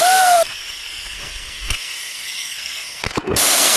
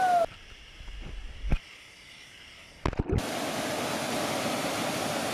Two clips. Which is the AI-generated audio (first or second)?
first